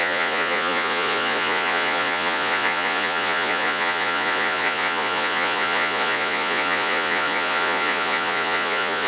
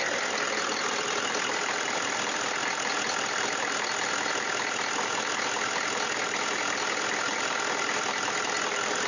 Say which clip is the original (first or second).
second